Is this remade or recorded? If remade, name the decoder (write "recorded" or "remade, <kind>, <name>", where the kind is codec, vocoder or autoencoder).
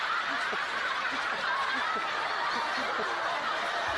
recorded